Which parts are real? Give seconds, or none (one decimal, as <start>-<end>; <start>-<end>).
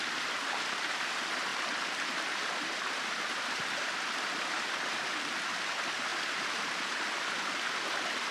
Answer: 1.5-2.0; 6.1-8.3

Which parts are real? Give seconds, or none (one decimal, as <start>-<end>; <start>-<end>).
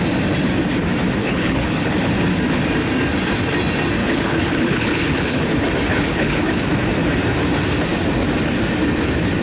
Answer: 0.0-1.2; 2.1-4.0; 5.5-5.9; 6.6-9.4